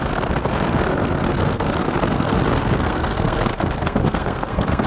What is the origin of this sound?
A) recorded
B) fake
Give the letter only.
B